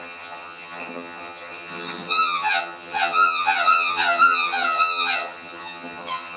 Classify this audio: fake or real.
fake